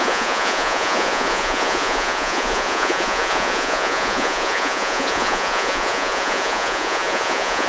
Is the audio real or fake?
fake